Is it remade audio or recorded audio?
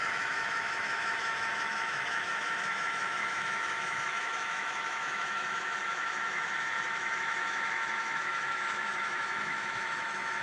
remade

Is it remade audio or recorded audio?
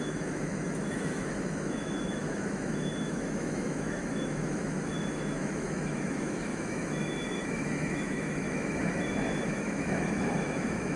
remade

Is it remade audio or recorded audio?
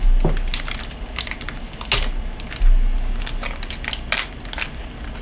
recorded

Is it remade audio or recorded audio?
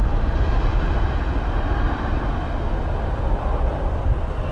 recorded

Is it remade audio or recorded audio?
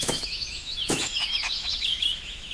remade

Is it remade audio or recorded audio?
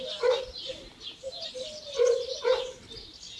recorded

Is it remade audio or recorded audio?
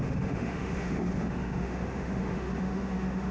remade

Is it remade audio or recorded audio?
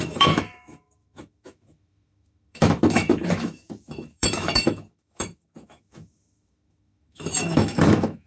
remade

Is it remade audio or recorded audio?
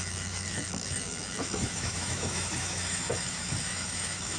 remade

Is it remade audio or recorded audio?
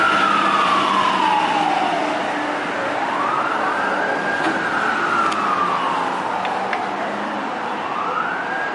recorded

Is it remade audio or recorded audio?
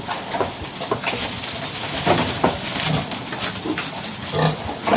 recorded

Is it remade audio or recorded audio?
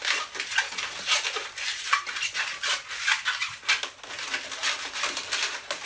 recorded